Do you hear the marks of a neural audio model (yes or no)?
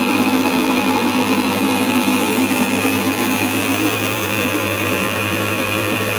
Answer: yes